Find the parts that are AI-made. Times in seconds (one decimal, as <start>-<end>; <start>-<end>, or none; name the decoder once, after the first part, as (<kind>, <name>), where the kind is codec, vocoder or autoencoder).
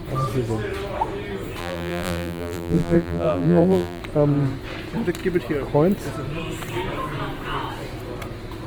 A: 1.6-4.0 (vocoder, BigVGAN v2)